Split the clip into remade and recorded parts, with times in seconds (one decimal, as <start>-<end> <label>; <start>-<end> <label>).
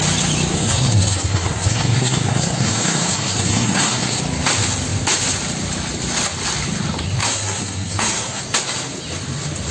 0.0-0.5 recorded; 0.5-4.2 remade; 4.2-7.2 recorded; 7.2-8.4 remade; 8.4-9.7 recorded